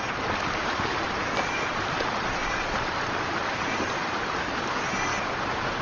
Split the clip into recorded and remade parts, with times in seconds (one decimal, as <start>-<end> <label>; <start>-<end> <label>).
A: 0.0-1.2 recorded; 1.2-4.6 remade; 4.6-5.8 recorded